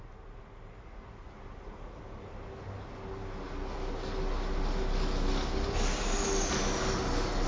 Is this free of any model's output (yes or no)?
yes